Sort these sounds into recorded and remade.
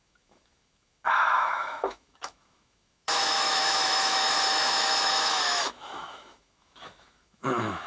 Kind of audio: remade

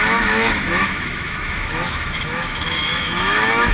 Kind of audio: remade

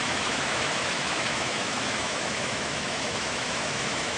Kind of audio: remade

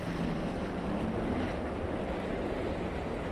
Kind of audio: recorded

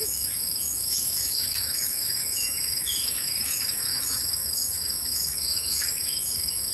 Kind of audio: remade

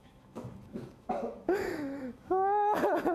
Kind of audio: remade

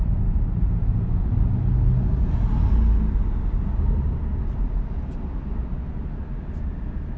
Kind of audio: recorded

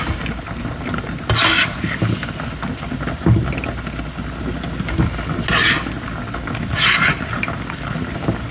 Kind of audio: recorded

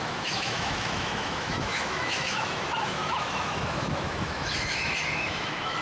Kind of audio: remade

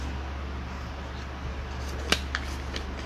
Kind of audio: recorded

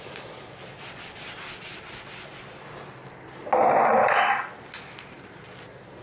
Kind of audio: recorded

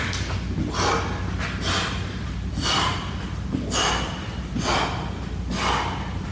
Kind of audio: recorded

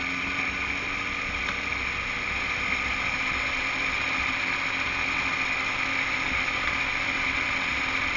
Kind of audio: recorded